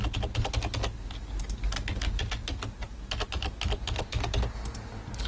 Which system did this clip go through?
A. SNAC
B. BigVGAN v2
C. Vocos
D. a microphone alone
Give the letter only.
D